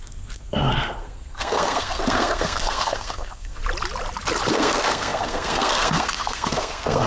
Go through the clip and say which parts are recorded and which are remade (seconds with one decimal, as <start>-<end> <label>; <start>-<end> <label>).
0.0-3.6 remade; 3.6-4.5 recorded; 4.5-7.1 remade